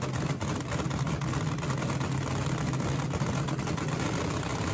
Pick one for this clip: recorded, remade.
recorded